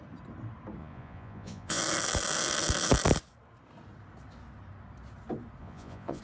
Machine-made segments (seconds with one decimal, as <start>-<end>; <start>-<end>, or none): 0.8-1.8; 5.6-6.2